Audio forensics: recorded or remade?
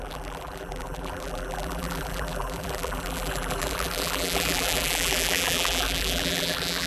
remade